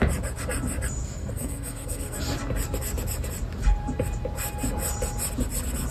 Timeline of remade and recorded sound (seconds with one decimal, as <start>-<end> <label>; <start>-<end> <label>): 0.0-1.0 recorded; 1.0-2.2 remade; 2.2-5.9 recorded